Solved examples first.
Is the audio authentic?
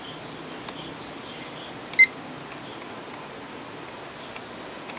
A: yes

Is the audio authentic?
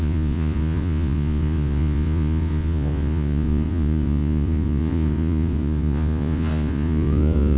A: no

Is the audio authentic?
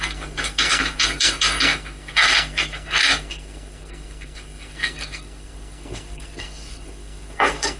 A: no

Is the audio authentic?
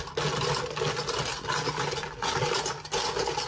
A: yes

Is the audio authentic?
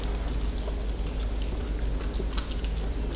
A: yes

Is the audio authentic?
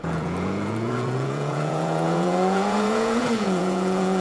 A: no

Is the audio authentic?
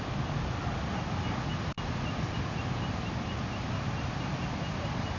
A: yes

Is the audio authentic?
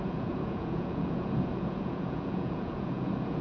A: no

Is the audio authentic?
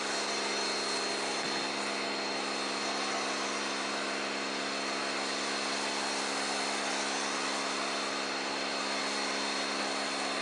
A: yes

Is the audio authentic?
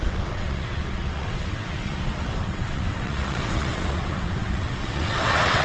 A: no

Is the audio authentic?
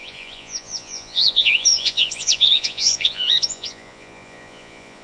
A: no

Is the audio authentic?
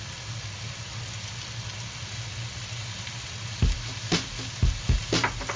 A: yes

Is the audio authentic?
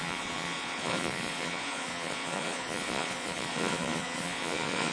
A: no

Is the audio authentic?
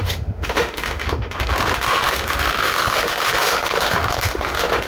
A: no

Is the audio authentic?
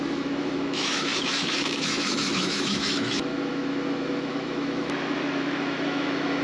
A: no